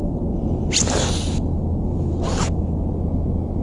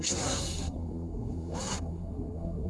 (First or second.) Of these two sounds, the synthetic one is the second